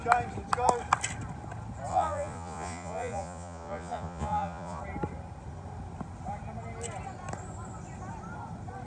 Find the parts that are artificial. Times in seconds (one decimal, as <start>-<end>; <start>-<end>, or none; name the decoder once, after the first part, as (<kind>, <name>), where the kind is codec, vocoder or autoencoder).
1.9-4.8 (vocoder, Vocos)